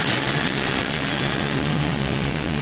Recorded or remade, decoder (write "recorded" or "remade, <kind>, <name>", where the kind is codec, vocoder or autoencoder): remade, vocoder, WaveNeXt